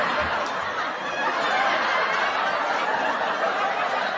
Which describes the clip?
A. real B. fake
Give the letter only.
A